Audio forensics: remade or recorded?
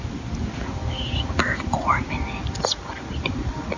recorded